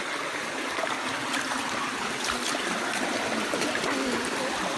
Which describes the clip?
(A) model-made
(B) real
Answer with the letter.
B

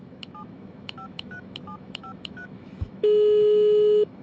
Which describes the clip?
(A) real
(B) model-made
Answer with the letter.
B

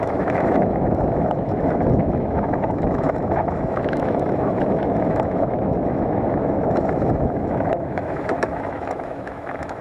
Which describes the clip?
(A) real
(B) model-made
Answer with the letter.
B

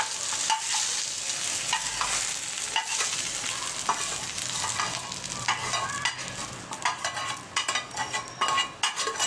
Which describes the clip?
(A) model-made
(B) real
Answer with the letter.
B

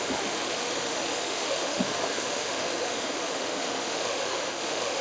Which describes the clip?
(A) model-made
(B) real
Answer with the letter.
A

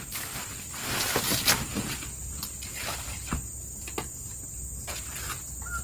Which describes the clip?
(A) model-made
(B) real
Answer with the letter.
B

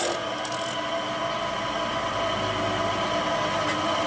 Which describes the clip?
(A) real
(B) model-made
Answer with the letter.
A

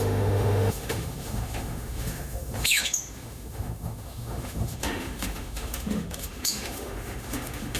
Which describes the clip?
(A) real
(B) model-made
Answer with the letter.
B